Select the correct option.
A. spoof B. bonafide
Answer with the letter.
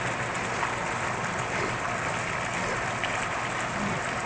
B